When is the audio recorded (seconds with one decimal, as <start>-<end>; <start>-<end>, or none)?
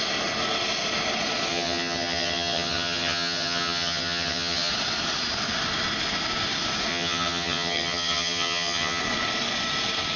0.0-1.5; 4.7-6.9; 9.0-10.2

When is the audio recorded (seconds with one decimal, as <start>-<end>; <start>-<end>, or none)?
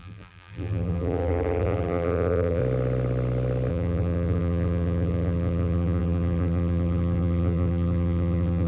2.6-3.7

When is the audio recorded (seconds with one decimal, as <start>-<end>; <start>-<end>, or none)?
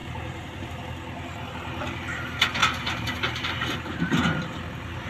0.7-2.6; 3.7-5.1